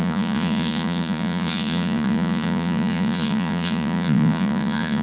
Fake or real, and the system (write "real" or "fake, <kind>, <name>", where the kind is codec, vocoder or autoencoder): fake, vocoder, Vocos